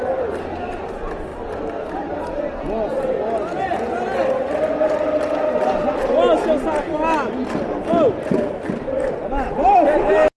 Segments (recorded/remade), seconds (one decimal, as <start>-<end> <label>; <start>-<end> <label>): 0.0-10.4 recorded

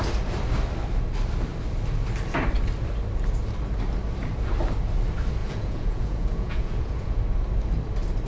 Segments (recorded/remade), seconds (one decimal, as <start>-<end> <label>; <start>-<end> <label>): 0.0-5.4 recorded; 5.4-7.2 remade; 7.2-8.3 recorded

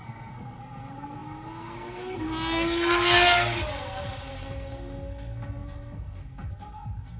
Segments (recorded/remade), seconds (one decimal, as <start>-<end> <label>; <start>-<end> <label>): 0.0-7.2 remade

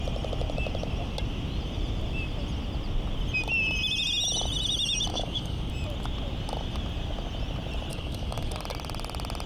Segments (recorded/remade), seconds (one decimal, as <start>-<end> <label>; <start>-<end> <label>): 0.0-5.1 recorded; 5.1-5.7 remade; 5.7-7.9 recorded; 7.9-8.5 remade; 8.5-9.5 recorded

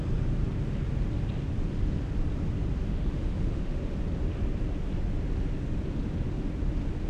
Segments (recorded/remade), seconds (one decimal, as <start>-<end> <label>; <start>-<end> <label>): 0.0-2.9 recorded; 2.9-3.8 remade; 3.8-7.1 recorded